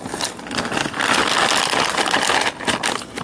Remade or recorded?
recorded